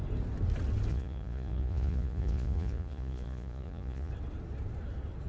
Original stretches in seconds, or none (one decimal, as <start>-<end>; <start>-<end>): 0.0-0.9; 4.1-5.3